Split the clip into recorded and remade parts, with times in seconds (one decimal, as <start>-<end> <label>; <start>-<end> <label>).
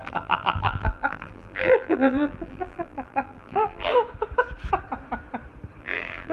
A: 0.0-3.9 remade; 3.9-5.8 recorded; 5.8-6.3 remade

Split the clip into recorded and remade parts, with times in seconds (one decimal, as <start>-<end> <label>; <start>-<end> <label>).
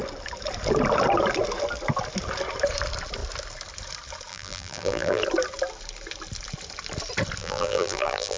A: 0.0-4.3 recorded; 4.3-5.2 remade; 5.2-7.4 recorded; 7.4-8.4 remade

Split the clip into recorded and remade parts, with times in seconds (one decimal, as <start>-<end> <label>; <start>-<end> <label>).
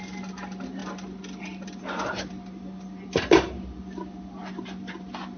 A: 0.0-5.4 recorded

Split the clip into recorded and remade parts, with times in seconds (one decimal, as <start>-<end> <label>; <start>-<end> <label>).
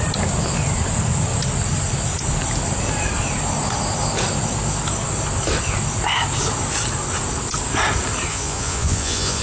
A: 0.0-8.3 recorded; 8.3-9.4 remade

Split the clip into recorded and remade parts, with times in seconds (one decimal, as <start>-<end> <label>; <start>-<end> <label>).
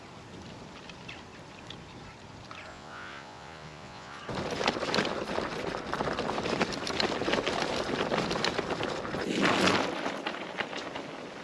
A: 0.0-2.7 recorded; 2.7-4.2 remade; 4.2-11.4 recorded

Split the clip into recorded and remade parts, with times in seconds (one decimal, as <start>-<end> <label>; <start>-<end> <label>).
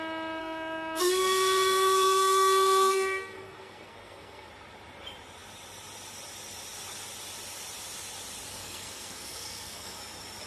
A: 0.0-0.4 recorded; 0.4-4.5 remade; 4.5-8.5 recorded; 8.5-10.0 remade; 10.0-10.5 recorded